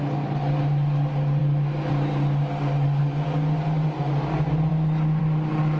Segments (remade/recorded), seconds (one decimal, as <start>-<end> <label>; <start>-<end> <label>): 0.0-1.4 recorded; 1.4-1.9 remade; 1.9-5.8 recorded